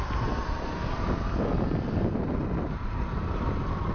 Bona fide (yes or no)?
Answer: yes